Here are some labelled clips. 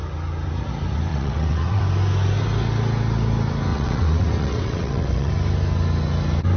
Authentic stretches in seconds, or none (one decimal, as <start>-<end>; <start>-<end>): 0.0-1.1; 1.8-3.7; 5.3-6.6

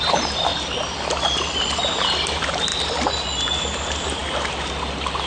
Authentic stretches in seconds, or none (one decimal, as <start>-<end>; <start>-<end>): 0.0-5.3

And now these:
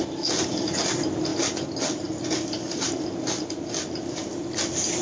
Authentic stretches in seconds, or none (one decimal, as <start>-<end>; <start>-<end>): 0.0-5.0

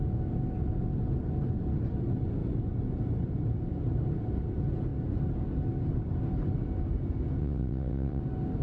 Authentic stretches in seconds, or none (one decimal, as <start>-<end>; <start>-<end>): 0.0-7.4; 8.2-8.6

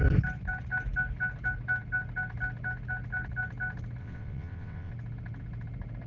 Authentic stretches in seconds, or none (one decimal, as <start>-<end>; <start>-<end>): 0.0-4.0; 4.9-6.1